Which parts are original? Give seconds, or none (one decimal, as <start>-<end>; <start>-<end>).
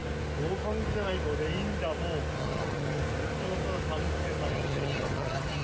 0.0-2.4; 3.0-4.5